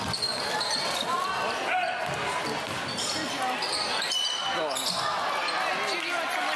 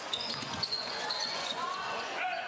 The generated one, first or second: second